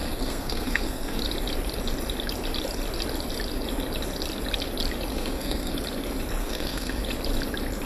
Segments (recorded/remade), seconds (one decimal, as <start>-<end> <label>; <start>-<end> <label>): 0.0-1.2 remade; 1.2-5.1 recorded; 5.1-5.7 remade; 5.7-6.4 recorded; 6.4-7.0 remade; 7.0-7.9 recorded